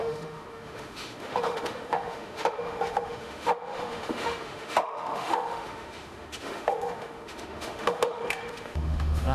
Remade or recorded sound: remade